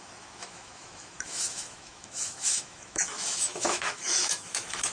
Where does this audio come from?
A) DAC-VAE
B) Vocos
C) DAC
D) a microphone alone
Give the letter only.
A